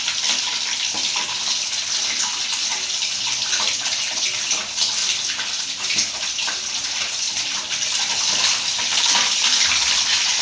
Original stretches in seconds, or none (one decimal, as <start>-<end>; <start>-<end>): 0.0-10.4